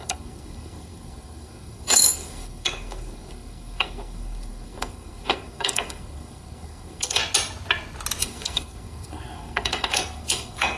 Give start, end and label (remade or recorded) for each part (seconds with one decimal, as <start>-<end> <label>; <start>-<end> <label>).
0.0-7.2 remade; 7.2-8.2 recorded; 8.2-10.8 remade